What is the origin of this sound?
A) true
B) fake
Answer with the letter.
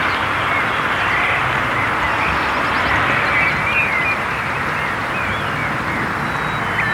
A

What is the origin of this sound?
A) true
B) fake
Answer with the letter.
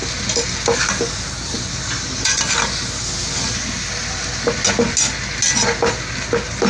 A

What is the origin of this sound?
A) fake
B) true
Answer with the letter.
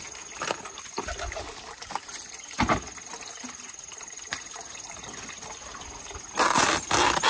B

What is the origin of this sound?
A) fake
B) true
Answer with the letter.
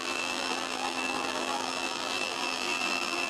A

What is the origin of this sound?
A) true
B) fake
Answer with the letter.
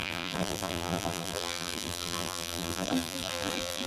B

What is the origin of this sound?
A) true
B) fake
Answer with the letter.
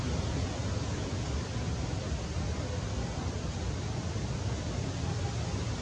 A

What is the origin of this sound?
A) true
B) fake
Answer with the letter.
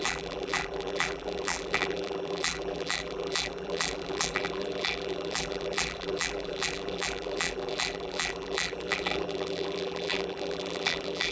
B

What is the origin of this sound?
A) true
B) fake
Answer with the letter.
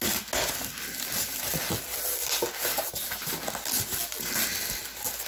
A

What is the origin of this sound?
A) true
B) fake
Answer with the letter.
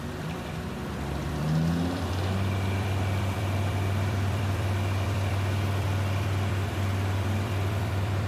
B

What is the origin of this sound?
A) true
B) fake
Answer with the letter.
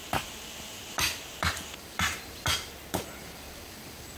B